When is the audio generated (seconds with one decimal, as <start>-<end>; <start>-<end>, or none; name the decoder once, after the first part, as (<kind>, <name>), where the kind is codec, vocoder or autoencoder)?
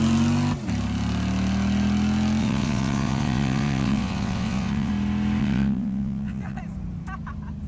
2.4-4.9 (vocoder, WaveNeXt); 5.4-6.6